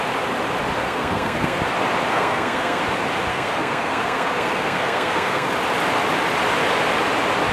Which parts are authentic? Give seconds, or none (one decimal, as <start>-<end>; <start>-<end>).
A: 0.0-0.8; 1.6-2.1; 2.8-3.3; 5.5-7.5